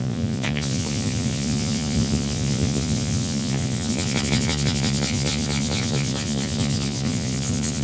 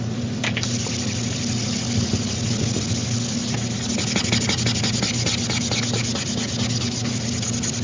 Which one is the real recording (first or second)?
second